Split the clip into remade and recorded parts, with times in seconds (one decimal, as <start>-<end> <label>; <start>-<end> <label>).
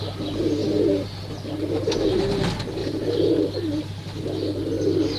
0.0-2.8 recorded; 2.8-3.4 remade; 3.4-5.2 recorded